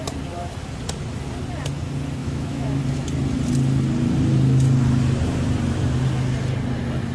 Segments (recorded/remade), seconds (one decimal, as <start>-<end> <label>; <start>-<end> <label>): 0.0-2.2 recorded; 2.2-2.8 remade; 2.8-7.1 recorded